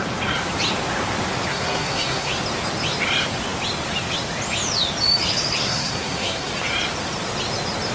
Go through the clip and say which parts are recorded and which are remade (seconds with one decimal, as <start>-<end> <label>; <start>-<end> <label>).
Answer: 0.0-1.5 recorded; 1.5-2.3 remade; 2.3-5.6 recorded; 5.6-6.5 remade; 6.5-7.9 recorded